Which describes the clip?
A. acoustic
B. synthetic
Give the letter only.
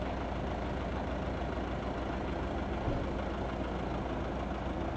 A